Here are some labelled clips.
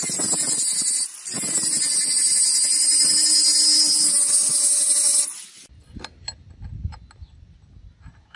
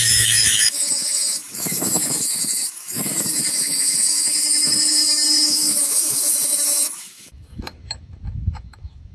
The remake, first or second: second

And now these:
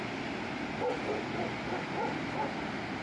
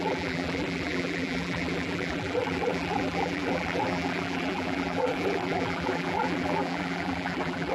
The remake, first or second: second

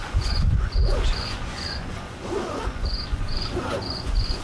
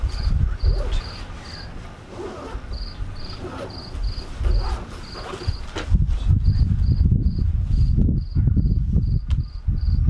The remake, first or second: first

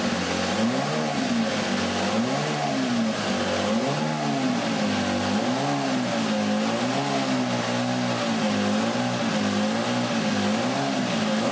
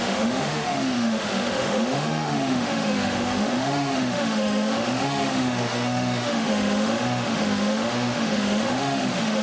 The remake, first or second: second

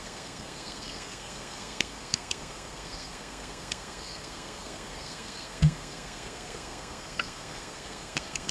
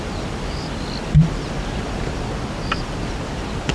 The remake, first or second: first